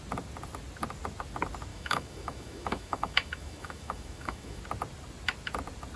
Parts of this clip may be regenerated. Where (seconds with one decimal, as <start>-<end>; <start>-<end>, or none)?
1.7-4.6

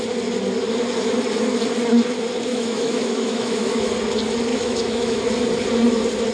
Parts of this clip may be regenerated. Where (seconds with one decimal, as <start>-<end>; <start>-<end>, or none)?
2.5-3.9; 4.5-5.2

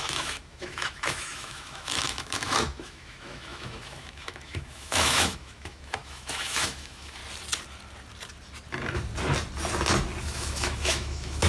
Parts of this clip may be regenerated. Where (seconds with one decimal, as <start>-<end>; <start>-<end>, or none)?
0.0-7.2; 10.2-11.5

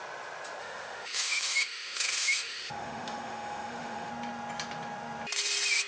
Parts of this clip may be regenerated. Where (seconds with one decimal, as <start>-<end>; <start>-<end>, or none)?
0.6-4.1

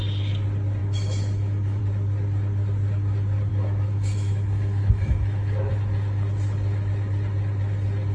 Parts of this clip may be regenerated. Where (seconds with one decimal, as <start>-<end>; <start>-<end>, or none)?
0.8-1.8; 3.5-5.7

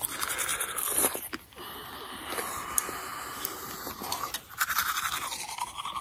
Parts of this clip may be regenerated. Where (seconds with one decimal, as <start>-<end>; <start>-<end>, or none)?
none

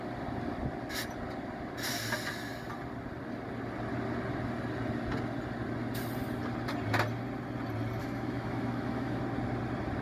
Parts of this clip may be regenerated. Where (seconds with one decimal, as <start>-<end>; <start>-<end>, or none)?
8.0-9.2